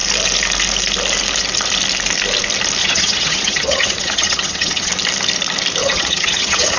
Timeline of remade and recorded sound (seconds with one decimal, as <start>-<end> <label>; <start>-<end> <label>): 0.0-2.8 recorded; 2.8-4.9 remade; 4.9-5.8 recorded; 5.8-6.8 remade